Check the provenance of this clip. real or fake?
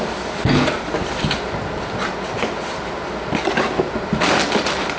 real